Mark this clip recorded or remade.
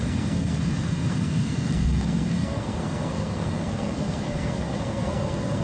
remade